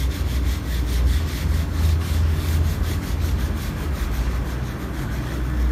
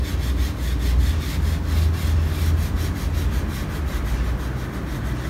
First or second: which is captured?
second